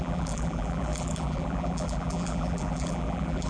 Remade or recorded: remade